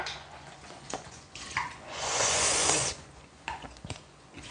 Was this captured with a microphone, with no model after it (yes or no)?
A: no